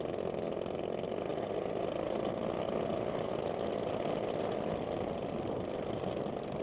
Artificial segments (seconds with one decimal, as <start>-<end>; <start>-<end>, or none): none